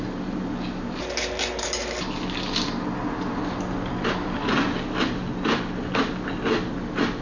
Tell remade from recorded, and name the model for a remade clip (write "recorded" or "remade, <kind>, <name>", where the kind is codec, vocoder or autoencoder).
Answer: recorded